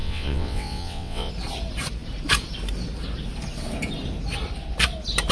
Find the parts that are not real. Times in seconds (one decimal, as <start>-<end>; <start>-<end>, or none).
0.0-1.3